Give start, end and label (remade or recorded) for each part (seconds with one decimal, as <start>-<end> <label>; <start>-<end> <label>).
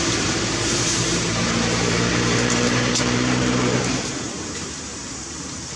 0.0-1.4 remade; 1.4-2.1 recorded; 2.1-5.8 remade